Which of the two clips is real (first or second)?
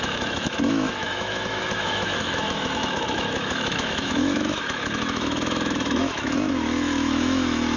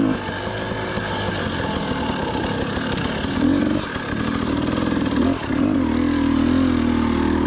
second